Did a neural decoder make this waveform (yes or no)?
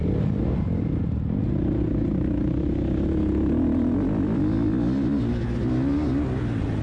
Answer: no